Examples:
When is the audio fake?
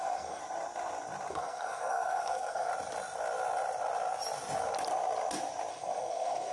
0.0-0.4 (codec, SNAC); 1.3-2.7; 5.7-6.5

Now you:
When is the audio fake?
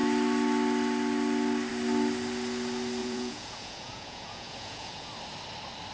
3.0-5.1 (vocoder, Vocos)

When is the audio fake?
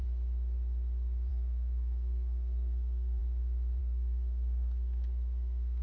1.3-3.2 (codec, SNAC); 3.8-5.8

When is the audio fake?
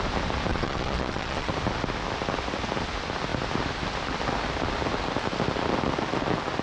0.5-1.5 (vocoder, Vocos)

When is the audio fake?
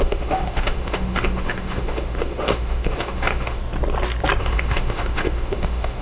0.0-3.6 (autoencoder, DAC-VAE); 4.4-6.0